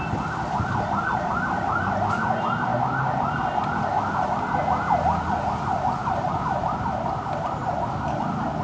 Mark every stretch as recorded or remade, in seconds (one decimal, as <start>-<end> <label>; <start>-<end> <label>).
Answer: 0.0-6.0 recorded; 6.0-7.8 remade; 7.8-8.6 recorded